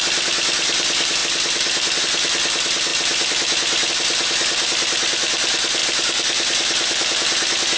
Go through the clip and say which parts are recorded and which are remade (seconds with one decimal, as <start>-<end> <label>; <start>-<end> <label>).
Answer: 0.0-1.2 remade; 1.2-2.0 recorded; 2.0-7.8 remade